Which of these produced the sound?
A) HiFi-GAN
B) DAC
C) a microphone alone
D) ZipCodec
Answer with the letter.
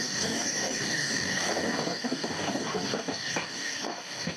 B